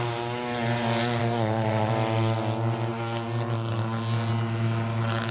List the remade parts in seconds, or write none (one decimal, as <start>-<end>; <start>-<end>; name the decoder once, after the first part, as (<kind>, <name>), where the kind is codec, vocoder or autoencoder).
1.2-1.9 (autoencoder, DAC-VAE)